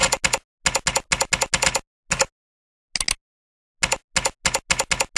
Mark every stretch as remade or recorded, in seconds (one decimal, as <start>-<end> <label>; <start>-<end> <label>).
0.0-5.2 recorded